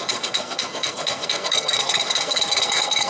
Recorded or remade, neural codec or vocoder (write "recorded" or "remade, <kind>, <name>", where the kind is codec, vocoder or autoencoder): remade, codec, SNAC